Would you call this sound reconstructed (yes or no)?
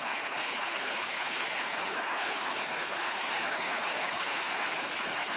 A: yes